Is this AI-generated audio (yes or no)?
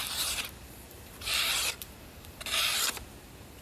yes